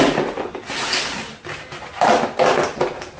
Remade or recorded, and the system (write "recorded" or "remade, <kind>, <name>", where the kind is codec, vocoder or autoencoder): recorded